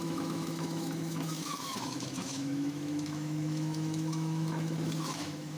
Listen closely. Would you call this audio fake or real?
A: fake